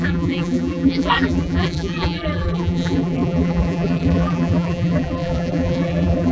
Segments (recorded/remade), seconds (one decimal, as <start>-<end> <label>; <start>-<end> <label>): 0.0-6.3 remade

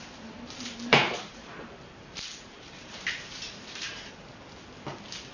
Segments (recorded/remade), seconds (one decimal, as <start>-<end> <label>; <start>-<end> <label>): 0.0-0.9 recorded; 0.9-4.1 remade; 4.1-5.3 recorded

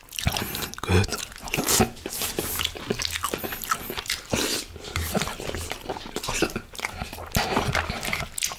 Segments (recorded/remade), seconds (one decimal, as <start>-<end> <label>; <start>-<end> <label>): 0.0-8.6 recorded